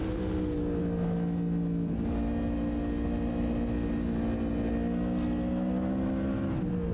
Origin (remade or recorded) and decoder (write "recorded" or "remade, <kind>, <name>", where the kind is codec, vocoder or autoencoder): recorded